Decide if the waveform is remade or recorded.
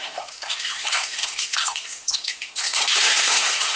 remade